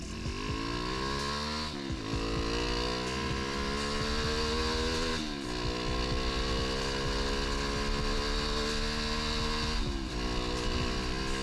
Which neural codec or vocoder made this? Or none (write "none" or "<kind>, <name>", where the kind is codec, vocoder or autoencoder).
none